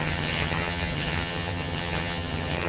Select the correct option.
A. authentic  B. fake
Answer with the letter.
B